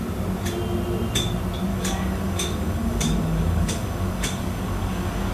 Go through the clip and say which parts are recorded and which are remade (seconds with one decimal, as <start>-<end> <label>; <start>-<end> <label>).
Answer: 0.0-1.7 recorded; 1.7-5.3 remade

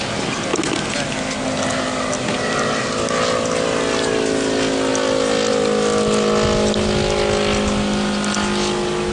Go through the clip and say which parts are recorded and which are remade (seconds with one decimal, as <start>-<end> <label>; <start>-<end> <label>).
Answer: 0.0-9.1 recorded